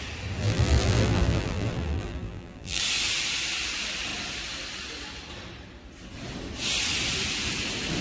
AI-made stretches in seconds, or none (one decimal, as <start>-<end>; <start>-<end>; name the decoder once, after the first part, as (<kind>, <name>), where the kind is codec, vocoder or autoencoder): 0.4-2.8 (vocoder, BigVGAN v2)